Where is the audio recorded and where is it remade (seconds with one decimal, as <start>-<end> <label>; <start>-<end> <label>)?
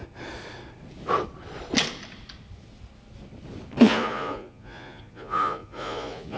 0.0-3.8 recorded; 3.8-6.4 remade